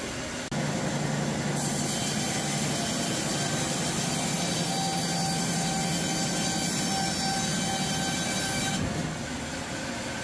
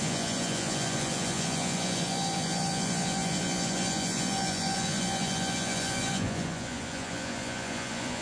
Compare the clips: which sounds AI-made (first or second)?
second